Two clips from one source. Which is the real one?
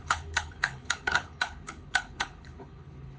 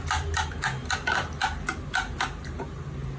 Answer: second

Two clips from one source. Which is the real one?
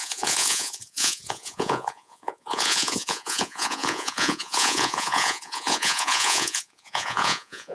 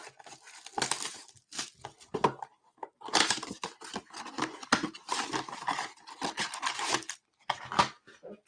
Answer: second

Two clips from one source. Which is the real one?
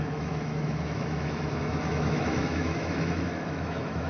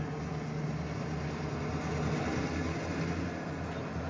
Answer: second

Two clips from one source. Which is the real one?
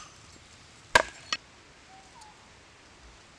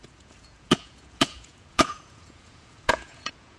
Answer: first